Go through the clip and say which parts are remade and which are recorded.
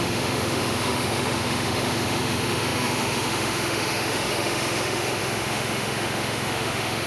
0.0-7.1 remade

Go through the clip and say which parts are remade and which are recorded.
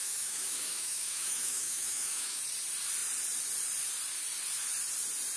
0.0-2.4 remade; 2.4-5.4 recorded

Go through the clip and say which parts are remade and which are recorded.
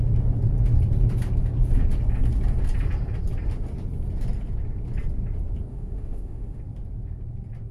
0.0-5.7 recorded; 5.7-6.6 remade; 6.6-7.7 recorded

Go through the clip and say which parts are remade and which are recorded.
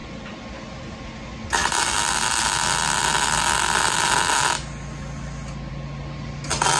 0.0-6.8 recorded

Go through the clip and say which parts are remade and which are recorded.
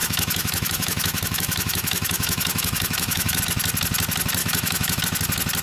0.0-3.4 remade; 3.4-4.4 recorded; 4.4-5.0 remade; 5.0-5.6 recorded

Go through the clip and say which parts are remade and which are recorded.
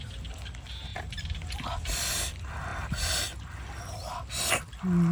0.0-5.1 recorded